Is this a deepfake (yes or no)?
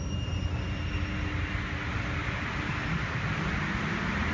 no